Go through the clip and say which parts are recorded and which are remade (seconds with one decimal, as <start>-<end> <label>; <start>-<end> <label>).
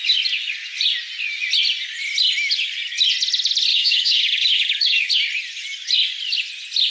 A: 0.0-3.7 recorded; 3.7-5.1 remade; 5.1-6.9 recorded